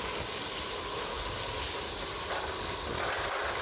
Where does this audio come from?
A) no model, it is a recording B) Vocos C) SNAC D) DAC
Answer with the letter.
A